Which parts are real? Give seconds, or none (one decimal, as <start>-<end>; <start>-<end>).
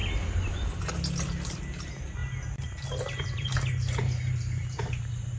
0.0-5.4